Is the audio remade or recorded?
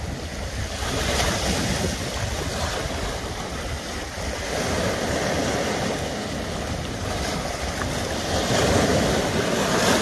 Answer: recorded